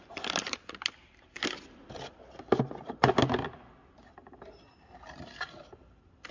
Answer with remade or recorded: recorded